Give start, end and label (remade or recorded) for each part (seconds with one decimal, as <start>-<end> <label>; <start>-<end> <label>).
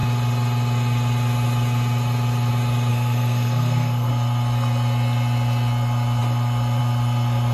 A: 0.0-2.9 recorded; 2.9-4.1 remade; 4.1-7.5 recorded